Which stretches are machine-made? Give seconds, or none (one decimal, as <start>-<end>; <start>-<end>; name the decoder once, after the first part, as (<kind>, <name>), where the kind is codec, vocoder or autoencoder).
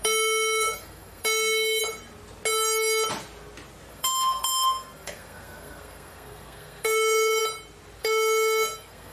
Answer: 0.0-1.8 (codec, SNAC); 3.9-7.4; 8.0-9.1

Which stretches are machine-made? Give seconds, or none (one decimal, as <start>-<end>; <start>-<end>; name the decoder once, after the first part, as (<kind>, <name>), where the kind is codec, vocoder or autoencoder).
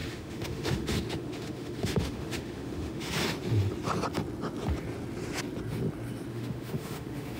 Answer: 0.0-3.1 (autoencoder, DAC-VAE); 6.3-7.4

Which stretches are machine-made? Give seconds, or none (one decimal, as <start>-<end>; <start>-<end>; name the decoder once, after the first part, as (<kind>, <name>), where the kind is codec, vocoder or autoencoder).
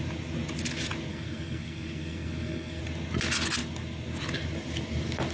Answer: 1.1-2.8 (codec, SNAC)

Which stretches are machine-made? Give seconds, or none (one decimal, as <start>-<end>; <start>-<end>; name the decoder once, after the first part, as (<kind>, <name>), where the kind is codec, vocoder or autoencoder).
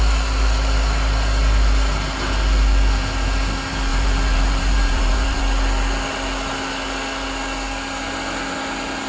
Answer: 3.9-5.4 (vocoder, BigVGAN v2)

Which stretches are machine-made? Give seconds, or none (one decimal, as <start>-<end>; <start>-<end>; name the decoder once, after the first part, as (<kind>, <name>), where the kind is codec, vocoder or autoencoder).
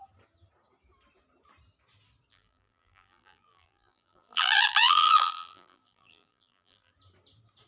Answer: 2.3-6.9 (vocoder, BigVGAN v2)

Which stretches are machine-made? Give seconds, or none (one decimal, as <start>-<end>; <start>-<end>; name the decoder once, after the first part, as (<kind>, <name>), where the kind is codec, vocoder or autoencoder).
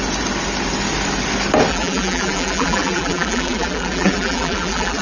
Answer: 1.7-5.0 (vocoder, BigVGAN v2)